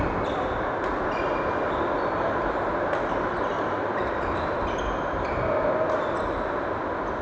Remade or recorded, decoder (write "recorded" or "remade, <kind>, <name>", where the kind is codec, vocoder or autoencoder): recorded